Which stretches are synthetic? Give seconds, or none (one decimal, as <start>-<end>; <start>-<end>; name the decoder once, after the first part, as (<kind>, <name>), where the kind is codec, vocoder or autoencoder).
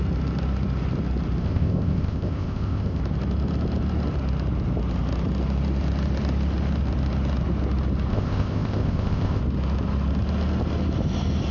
1.4-3.0 (codec, ZipCodec); 8.1-9.4